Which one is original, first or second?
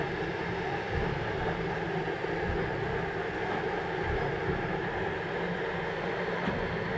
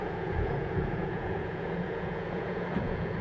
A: first